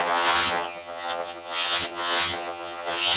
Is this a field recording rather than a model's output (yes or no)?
no